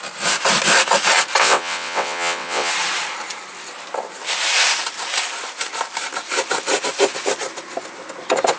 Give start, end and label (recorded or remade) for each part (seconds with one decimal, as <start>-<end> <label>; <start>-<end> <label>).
0.0-1.4 recorded; 1.4-2.7 remade; 2.7-8.6 recorded